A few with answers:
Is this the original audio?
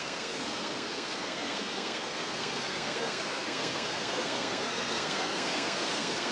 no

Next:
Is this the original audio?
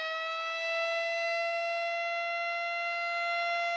yes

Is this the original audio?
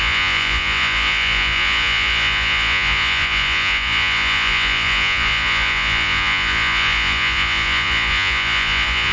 no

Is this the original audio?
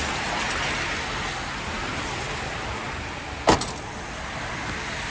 yes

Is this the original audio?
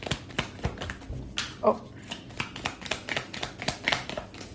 yes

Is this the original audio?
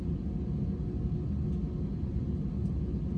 yes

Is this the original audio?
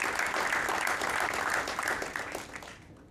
yes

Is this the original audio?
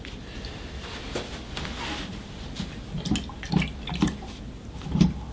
yes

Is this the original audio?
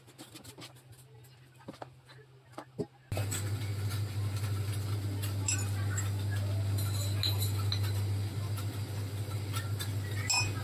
yes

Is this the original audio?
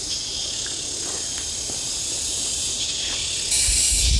yes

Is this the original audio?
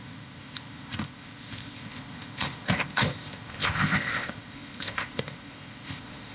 no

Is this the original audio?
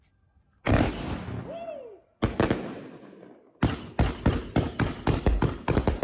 yes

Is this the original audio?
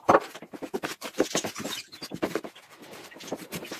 no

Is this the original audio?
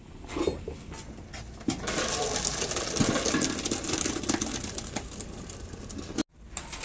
yes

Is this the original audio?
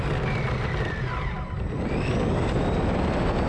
yes